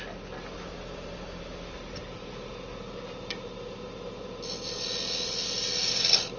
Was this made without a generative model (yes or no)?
yes